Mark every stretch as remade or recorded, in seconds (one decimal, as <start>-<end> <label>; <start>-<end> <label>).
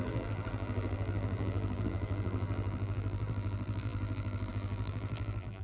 0.0-5.6 remade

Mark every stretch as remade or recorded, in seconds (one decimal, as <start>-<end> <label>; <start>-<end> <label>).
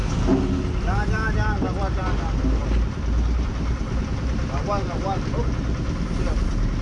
0.0-6.8 recorded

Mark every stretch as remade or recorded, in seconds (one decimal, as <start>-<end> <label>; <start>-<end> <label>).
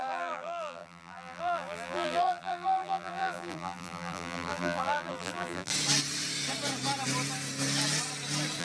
0.0-5.7 remade; 5.7-8.6 recorded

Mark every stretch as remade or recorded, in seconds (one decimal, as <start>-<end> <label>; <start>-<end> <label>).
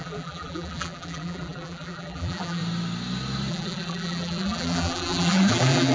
0.0-2.6 remade; 2.6-3.5 recorded; 3.5-5.9 remade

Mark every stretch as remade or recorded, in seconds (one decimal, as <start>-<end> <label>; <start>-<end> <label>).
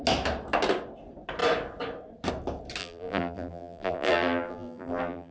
0.0-2.8 recorded; 2.8-5.3 remade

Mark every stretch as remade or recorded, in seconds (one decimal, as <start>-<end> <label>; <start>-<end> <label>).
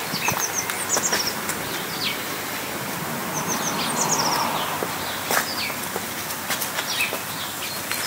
0.0-8.1 recorded